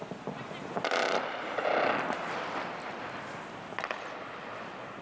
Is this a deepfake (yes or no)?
no